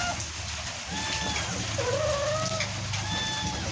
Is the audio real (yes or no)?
yes